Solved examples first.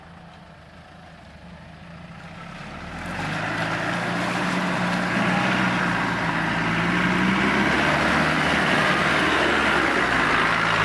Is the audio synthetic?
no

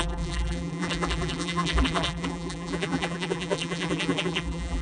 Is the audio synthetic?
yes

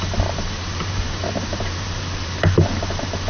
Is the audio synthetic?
yes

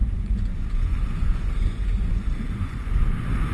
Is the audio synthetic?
yes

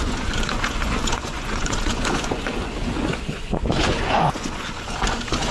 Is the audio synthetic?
yes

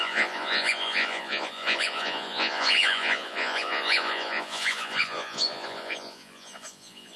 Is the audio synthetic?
yes